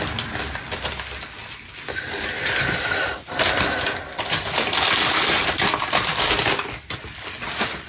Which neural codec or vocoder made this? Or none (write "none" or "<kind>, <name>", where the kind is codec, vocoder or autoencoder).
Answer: none